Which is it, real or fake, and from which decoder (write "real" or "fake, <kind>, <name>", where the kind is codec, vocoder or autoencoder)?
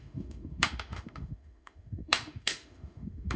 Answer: fake, autoencoder, DAC-VAE